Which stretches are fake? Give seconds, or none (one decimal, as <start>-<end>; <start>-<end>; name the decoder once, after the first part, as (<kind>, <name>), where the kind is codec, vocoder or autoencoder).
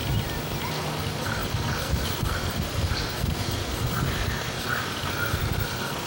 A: 0.7-6.1 (codec, SNAC)